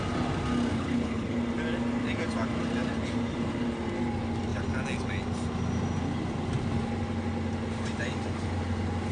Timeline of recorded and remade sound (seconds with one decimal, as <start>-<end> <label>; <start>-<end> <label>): 0.0-0.7 recorded; 0.7-1.4 remade; 1.4-9.1 recorded